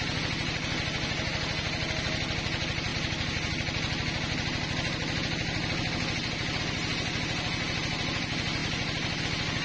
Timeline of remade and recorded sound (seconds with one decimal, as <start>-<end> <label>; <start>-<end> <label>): 0.0-9.6 recorded